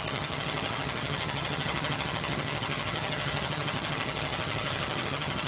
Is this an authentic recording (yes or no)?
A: no